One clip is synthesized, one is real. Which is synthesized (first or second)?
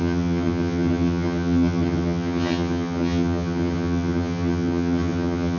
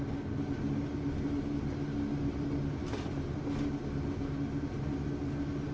first